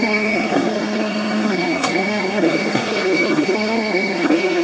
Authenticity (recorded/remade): remade